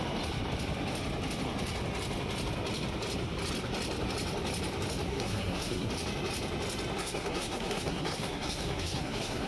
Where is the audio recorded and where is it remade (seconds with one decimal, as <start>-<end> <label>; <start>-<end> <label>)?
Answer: 0.0-5.1 recorded; 5.1-5.9 remade; 5.9-7.0 recorded; 7.0-9.5 remade